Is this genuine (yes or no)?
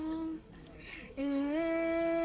no